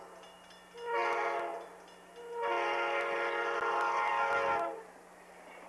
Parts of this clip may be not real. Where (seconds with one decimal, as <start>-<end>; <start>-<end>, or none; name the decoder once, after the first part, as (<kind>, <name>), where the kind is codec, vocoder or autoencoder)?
none